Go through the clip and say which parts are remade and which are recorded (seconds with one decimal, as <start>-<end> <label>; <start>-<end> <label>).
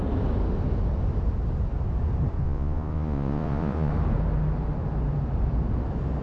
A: 0.0-2.4 recorded; 2.4-3.9 remade; 3.9-6.2 recorded